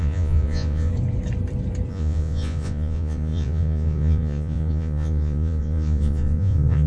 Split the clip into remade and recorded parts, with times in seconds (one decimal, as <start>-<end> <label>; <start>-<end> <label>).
0.0-0.9 remade; 0.9-1.9 recorded; 1.9-6.9 remade